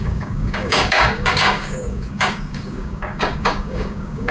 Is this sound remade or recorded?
remade